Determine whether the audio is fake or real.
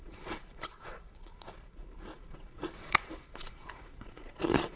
fake